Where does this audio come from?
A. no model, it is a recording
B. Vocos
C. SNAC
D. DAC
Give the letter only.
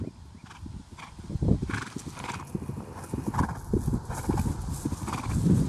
A